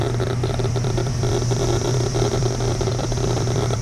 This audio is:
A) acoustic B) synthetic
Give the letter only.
B